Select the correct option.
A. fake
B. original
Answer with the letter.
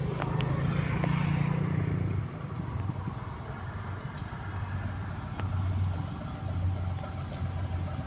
B